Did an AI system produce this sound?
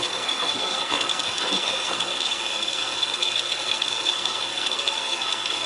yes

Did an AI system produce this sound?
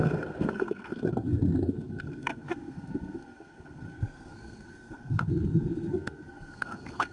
yes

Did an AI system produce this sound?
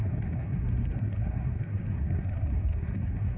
yes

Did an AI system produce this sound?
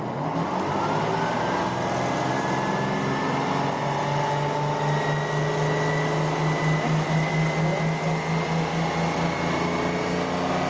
no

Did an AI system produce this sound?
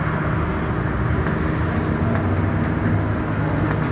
no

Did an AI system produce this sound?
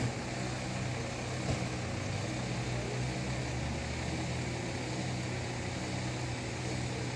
no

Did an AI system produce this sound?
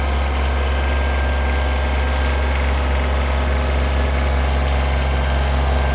no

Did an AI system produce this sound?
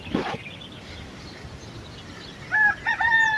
no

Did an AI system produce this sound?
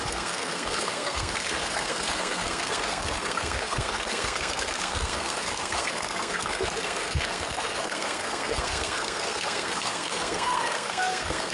yes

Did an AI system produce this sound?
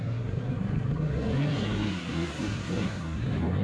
yes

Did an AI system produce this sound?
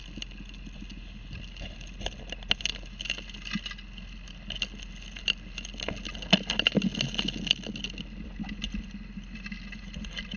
no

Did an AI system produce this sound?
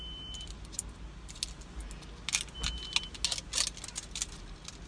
no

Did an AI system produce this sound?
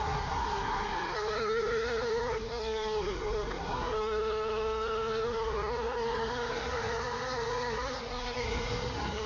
yes